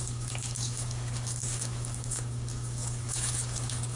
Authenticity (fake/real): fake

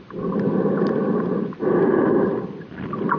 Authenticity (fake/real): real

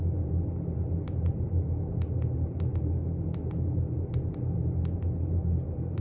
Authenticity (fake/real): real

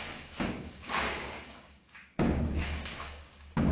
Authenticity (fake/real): fake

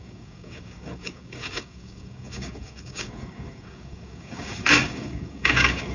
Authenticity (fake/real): fake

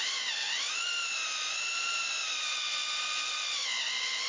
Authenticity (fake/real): real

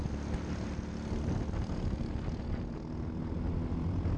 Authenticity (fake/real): real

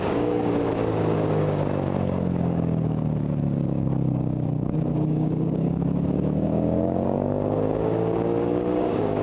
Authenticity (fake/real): fake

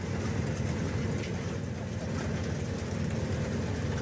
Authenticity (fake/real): real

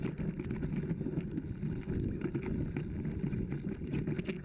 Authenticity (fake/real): real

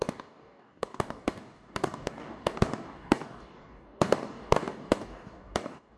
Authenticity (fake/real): fake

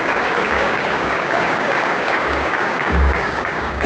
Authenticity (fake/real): fake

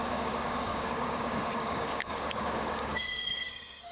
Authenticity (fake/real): fake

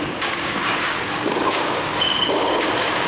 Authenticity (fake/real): fake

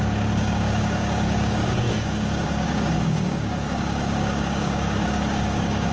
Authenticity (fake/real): fake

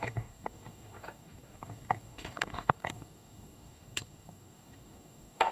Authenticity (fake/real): fake